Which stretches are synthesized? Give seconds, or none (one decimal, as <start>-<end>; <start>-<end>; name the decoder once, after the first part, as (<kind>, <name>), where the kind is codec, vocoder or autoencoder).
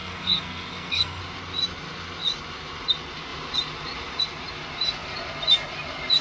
0.0-1.2 (codec, SNAC)